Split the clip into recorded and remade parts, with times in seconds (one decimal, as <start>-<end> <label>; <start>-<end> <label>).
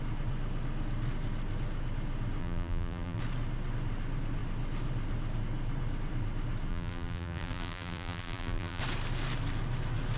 0.0-2.4 recorded; 2.4-3.2 remade; 3.2-6.7 recorded; 6.7-8.8 remade; 8.8-10.2 recorded